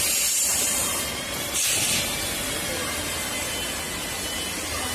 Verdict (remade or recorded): recorded